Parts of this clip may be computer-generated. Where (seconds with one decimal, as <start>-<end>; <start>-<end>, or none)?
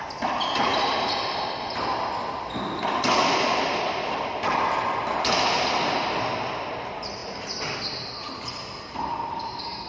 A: none